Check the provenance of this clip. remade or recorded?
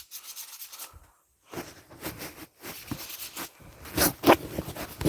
recorded